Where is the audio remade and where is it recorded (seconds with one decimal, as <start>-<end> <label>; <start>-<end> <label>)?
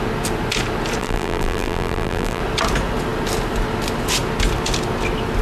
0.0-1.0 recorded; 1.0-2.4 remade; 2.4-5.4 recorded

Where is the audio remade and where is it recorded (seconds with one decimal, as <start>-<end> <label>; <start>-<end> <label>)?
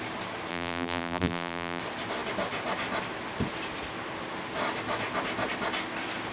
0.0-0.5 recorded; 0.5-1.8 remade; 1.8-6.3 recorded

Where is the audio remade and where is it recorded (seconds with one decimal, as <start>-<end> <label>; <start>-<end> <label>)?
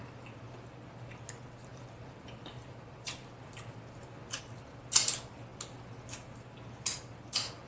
0.0-1.7 recorded; 1.7-4.3 remade; 4.3-7.7 recorded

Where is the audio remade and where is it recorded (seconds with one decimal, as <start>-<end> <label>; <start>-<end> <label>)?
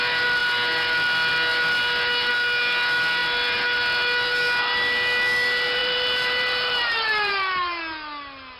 0.0-5.8 recorded; 5.8-7.8 remade; 7.8-8.6 recorded